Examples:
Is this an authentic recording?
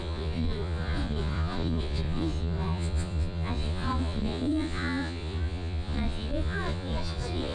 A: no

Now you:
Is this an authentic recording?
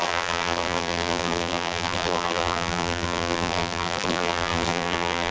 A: no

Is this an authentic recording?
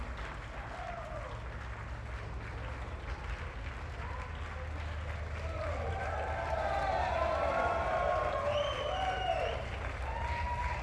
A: yes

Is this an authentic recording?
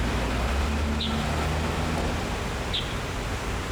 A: yes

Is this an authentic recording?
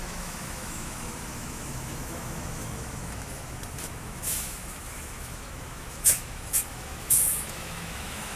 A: no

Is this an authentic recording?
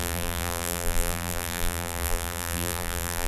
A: no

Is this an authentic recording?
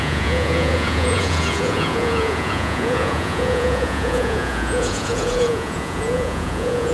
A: no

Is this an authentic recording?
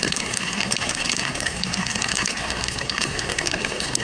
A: no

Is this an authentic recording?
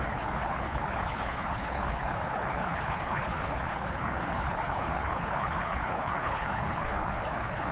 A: no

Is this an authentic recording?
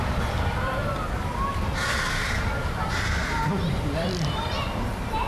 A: no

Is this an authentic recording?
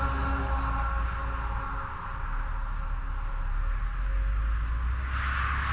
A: yes